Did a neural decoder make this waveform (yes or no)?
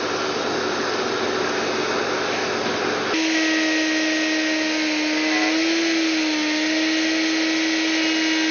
no